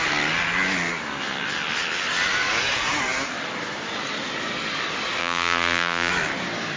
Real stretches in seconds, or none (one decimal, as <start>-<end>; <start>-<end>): 0.0-5.2; 6.1-6.8